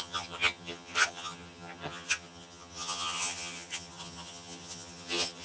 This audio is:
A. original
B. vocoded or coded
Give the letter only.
B